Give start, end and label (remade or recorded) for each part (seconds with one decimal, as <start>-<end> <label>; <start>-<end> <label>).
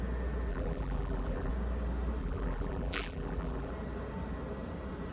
0.0-0.5 recorded; 0.5-1.5 remade; 1.5-2.2 recorded; 2.2-3.7 remade; 3.7-5.1 recorded